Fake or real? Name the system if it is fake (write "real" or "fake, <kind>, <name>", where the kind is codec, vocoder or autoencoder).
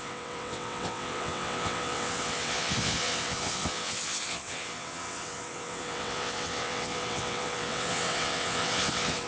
fake, vocoder, WaveNeXt